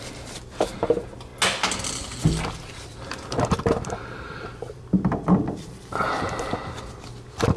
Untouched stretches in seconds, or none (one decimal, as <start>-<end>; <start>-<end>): 1.3-2.3